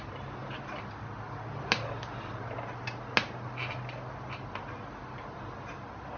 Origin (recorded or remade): recorded